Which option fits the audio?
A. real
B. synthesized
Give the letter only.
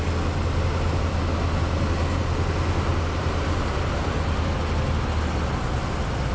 A